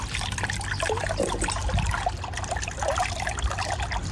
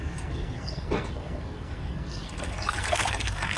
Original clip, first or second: first